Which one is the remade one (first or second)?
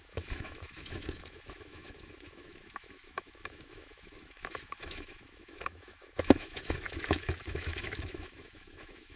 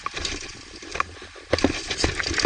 first